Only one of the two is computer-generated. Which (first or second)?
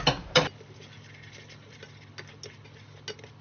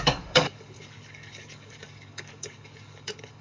second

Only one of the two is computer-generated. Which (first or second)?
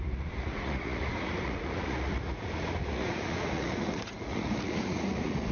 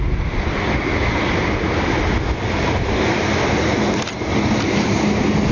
first